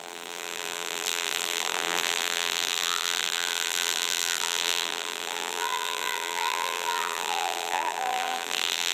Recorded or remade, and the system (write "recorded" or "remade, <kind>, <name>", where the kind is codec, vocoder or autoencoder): remade, vocoder, BigVGAN v2